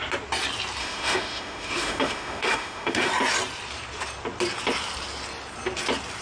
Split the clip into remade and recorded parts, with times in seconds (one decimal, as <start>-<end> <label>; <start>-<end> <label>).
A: 0.0-0.8 recorded; 0.8-3.1 remade; 3.1-6.2 recorded